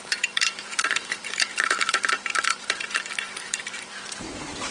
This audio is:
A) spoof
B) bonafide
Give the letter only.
A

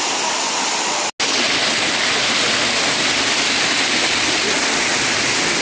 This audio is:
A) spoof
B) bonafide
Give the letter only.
B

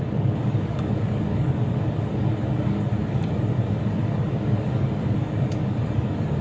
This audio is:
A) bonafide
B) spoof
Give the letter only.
B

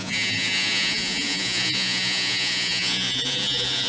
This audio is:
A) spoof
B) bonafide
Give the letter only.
A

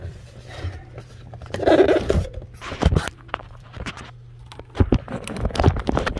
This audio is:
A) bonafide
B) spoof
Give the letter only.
B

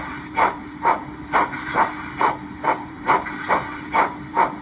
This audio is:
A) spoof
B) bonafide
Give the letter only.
A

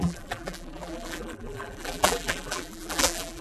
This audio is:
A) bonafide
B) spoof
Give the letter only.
B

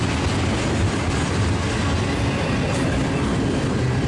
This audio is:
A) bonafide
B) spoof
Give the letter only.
A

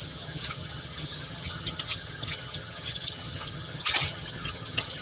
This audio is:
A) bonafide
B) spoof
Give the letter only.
B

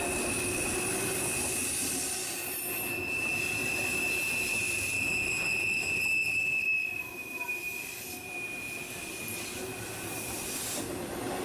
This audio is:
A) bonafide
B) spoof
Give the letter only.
A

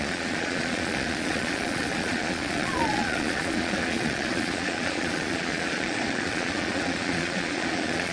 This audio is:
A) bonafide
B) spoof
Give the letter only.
B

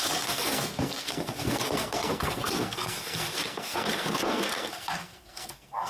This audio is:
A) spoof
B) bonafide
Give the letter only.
A